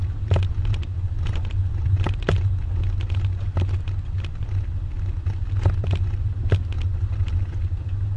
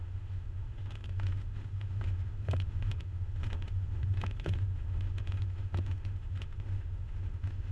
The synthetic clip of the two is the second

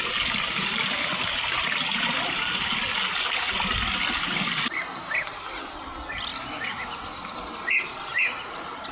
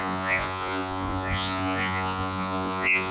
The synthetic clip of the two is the second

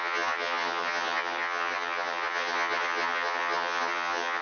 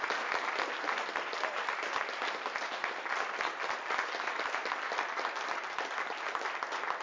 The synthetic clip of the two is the first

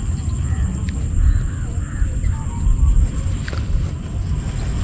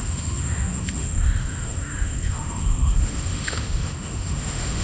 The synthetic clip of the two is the second